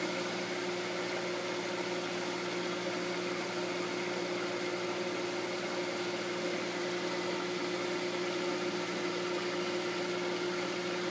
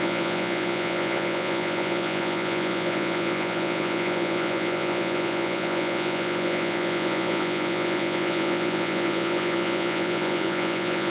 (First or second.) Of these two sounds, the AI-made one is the second